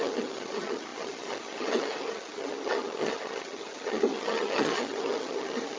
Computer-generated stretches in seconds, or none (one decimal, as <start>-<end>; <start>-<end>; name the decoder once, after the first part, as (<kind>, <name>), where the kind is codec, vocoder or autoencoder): 0.0-5.8 (vocoder, HiFi-GAN)

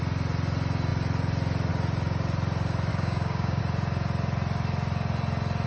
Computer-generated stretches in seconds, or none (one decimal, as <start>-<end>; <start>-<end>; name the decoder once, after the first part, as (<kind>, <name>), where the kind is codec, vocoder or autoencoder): 2.9-3.6 (codec, DAC)

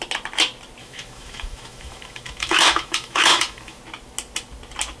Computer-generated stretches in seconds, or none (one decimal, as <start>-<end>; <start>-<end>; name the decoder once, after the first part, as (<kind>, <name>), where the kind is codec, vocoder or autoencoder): 0.8-3.8 (autoencoder, DAC-VAE)

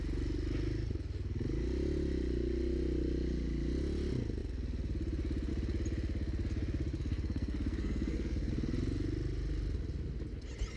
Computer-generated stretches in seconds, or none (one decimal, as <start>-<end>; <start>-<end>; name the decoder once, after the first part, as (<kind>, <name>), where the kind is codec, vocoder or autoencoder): 6.9-8.5 (codec, SNAC)